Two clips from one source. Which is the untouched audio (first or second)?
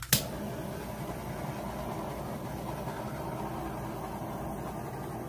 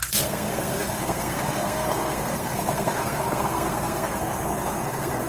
first